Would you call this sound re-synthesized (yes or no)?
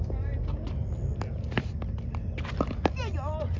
no